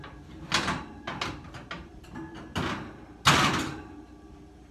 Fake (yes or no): no